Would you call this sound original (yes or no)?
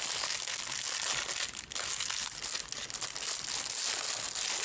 yes